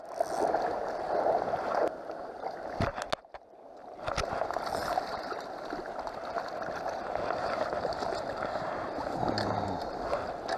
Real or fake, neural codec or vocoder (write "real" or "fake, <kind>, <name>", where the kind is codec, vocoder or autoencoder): real